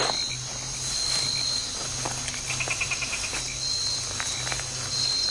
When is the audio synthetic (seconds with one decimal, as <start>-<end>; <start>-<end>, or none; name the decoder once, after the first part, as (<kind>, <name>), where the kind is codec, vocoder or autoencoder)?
none